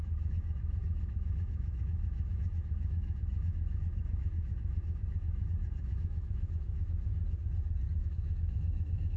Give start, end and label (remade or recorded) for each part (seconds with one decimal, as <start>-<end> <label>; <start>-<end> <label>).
0.0-7.1 remade; 7.1-8.0 recorded; 8.0-9.2 remade